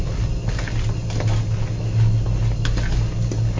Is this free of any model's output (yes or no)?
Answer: yes